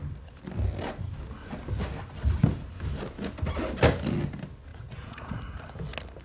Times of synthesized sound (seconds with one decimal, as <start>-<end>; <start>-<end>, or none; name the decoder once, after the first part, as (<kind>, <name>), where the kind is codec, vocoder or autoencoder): 4.7-5.6 (vocoder, Vocos)